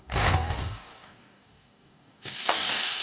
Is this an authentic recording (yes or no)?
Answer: no